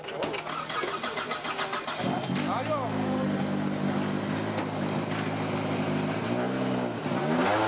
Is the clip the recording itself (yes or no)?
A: yes